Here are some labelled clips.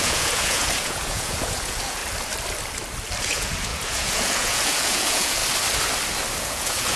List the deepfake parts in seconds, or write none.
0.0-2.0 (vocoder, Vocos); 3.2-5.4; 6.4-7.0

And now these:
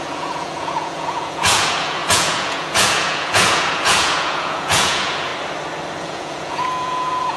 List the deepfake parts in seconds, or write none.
0.0-5.3 (vocoder, Vocos); 6.0-7.4

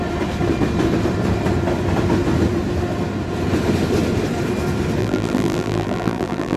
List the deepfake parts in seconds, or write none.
5.0-6.6 (vocoder, BigVGAN v2)

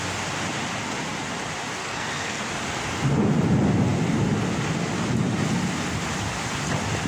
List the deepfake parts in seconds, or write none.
1.8-2.4 (codec, SNAC)

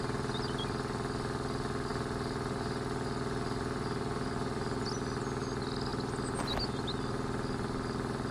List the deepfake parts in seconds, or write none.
none

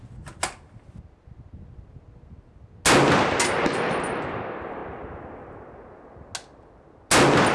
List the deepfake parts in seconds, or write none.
none

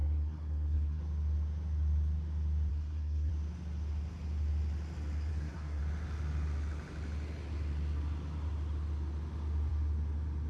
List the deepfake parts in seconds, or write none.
0.0-1.0 (codec, SNAC); 2.7-3.3; 5.3-5.8